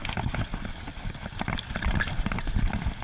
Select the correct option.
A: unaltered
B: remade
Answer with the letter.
A